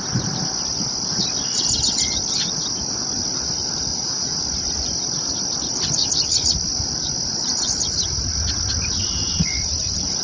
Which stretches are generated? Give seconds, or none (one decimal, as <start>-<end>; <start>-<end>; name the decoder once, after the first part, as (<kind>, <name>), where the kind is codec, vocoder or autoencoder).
3.9-4.4 (vocoder, Vocos)